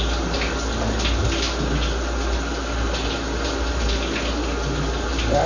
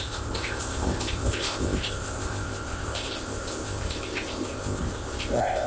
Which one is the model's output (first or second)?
second